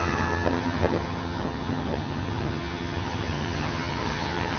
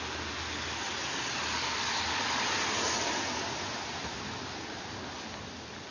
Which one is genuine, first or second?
second